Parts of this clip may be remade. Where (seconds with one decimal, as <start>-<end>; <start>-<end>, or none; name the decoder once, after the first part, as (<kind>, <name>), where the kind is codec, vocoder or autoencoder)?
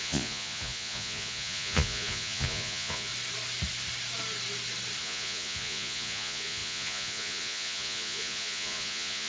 0.0-3.1 (vocoder, Vocos); 5.0-9.3